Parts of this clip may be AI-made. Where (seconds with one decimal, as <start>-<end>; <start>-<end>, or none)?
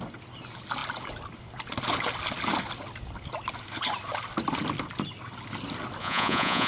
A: 6.0-6.7